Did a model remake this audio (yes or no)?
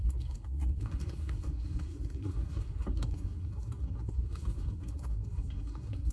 yes